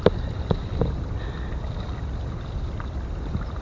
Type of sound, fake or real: real